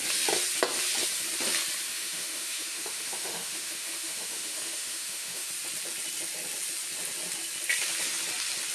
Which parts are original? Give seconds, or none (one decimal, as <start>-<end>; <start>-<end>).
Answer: 0.0-1.9; 5.5-8.7